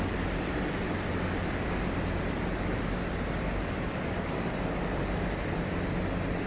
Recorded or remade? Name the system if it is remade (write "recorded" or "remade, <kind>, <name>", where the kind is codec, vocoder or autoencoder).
recorded